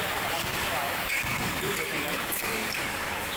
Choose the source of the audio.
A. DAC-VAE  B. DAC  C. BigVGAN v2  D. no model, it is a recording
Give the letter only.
B